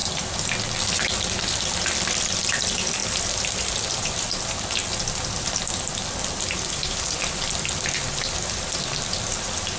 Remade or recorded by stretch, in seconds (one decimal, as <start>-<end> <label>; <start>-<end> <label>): 0.0-1.8 recorded; 1.8-4.8 remade; 4.8-6.4 recorded; 6.4-9.8 remade